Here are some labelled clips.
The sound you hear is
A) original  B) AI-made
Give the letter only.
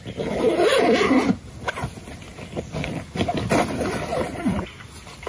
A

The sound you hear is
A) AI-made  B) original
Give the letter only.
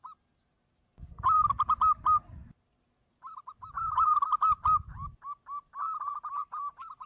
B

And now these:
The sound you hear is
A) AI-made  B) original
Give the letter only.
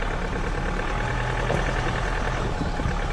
B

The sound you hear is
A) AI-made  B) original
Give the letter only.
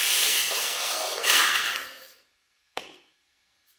A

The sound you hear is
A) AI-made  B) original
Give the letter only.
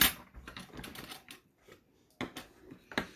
B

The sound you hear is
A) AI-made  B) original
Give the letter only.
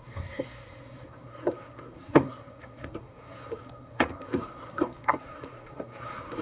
A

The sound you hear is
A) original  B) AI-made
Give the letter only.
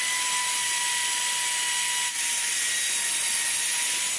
A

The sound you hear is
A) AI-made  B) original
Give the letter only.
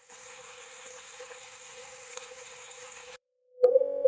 A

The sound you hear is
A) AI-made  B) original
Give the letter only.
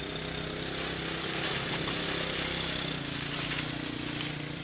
B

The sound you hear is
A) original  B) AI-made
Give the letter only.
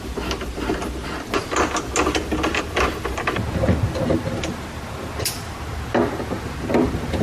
A